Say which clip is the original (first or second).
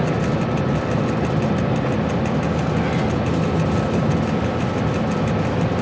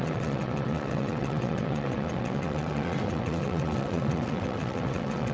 first